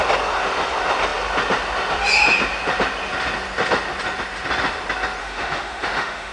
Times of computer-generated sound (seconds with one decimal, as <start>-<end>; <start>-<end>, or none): 5.2-6.3